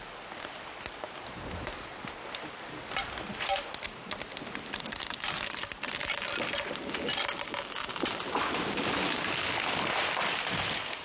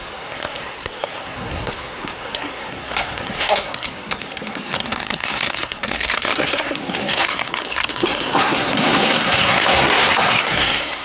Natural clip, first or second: first